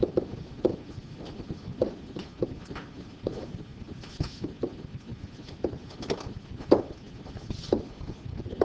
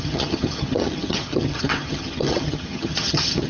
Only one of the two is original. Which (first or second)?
first